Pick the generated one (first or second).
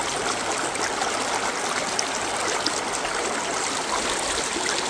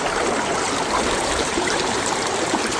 second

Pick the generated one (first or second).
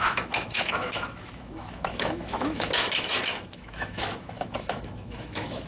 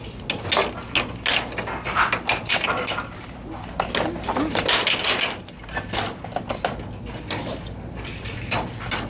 first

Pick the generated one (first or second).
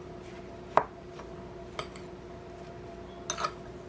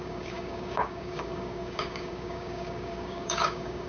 second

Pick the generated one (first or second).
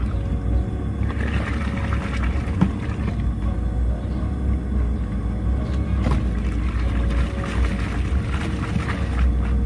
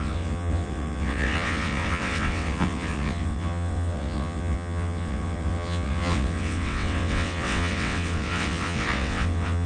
second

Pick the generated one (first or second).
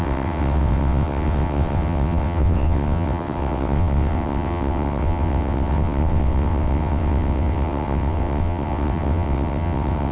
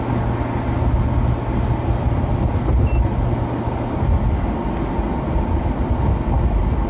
first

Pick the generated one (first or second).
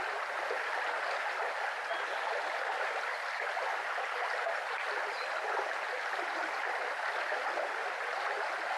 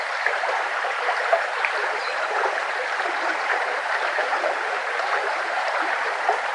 second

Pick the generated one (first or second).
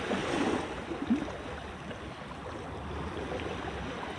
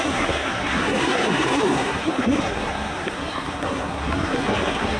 second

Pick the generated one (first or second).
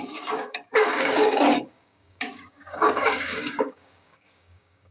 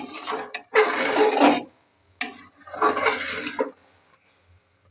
first